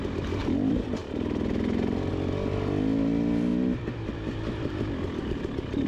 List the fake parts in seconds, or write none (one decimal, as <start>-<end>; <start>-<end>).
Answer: 3.5-5.9